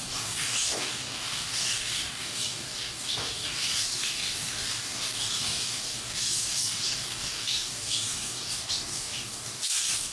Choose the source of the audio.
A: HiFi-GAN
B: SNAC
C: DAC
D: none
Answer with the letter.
C